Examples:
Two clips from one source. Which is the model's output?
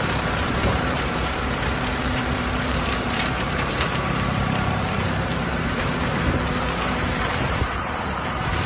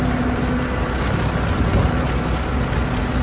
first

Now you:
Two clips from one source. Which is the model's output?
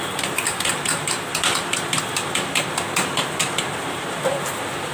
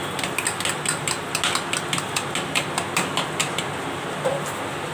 first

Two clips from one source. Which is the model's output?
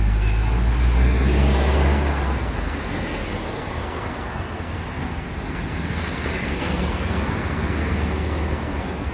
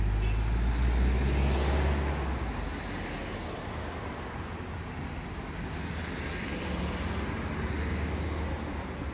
first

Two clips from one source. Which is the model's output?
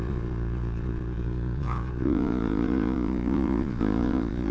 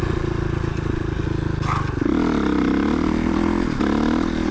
first